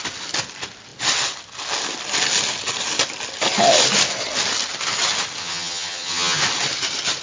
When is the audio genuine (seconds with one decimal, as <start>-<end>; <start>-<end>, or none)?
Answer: 0.0-5.4; 6.4-7.2